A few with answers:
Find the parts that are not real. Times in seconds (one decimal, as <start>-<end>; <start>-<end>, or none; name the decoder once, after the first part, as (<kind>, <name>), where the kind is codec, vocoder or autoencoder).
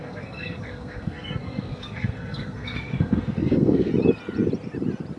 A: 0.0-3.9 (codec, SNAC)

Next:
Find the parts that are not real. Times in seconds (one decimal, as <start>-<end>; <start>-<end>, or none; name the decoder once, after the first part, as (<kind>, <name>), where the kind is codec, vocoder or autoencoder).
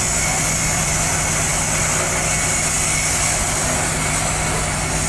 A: none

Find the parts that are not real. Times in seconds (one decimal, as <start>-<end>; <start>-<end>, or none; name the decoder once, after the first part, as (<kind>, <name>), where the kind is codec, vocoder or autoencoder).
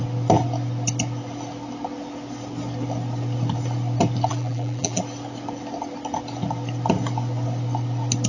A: 4.3-5.0 (vocoder, BigVGAN v2)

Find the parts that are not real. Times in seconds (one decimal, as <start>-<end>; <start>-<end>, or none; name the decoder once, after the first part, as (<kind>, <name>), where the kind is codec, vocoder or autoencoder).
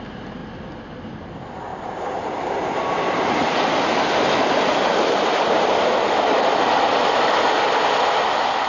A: 1.7-6.1 (vocoder, BigVGAN v2)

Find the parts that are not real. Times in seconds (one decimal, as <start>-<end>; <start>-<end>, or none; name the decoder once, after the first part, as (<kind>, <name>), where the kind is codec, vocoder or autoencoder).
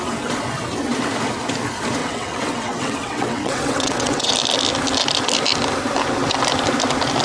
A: 2.0-4.3 (vocoder, WaveNeXt)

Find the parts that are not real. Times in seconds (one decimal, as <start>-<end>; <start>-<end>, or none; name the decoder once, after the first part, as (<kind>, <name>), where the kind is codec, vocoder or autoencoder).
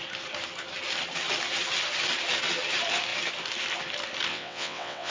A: 4.3-5.1 (vocoder, WaveNeXt)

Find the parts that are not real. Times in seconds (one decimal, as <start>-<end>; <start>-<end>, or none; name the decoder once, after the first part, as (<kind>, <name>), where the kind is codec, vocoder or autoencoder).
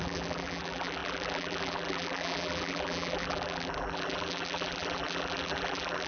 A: 0.0-6.1 (vocoder, BigVGAN v2)